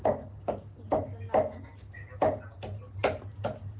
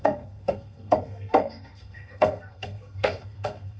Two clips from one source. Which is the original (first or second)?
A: first